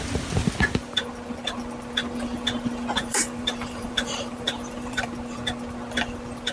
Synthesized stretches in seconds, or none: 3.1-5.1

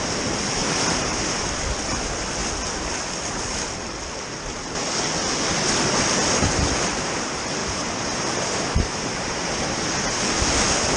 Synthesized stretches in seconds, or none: 0.6-1.4; 7.6-9.5

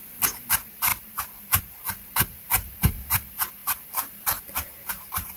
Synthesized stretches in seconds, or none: 0.5-5.4

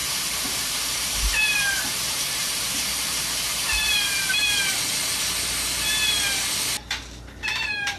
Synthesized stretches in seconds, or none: 0.0-4.3

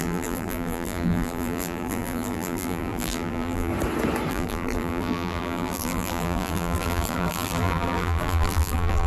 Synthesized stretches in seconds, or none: 0.0-3.7; 4.3-9.1

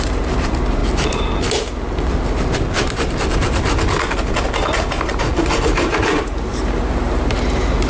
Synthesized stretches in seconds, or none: 0.0-0.8; 5.1-7.9

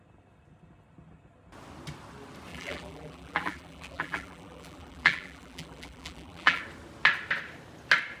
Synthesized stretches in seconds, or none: 2.5-6.6

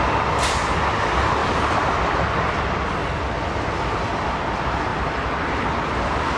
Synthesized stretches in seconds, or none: 3.0-4.4